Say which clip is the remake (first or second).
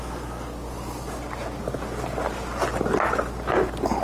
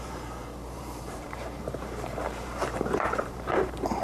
second